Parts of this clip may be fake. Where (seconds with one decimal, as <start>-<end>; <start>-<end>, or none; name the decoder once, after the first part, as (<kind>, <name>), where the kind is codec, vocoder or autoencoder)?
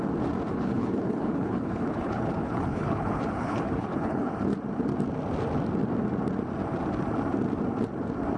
0.5-4.3 (codec, HILCodec)